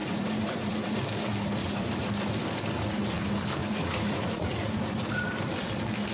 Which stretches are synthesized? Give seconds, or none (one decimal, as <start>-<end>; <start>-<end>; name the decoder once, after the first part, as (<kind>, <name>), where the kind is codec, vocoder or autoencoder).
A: 0.0-1.0 (vocoder, Vocos); 1.6-2.1; 3.6-5.1